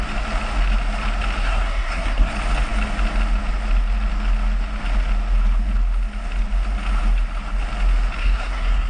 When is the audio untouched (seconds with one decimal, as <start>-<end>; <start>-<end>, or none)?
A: 0.0-1.4; 2.3-8.2